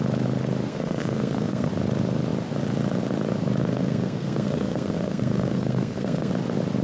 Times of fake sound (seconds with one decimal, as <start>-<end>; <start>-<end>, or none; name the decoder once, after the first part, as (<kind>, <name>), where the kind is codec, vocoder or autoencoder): 0.7-1.7 (codec, SNAC); 3.6-6.3